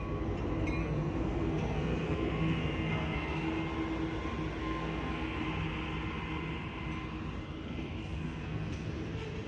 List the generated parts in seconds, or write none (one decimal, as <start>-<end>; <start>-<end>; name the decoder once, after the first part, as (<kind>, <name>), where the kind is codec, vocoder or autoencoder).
0.8-3.5 (codec, SNAC); 4.6-5.4; 8.0-8.9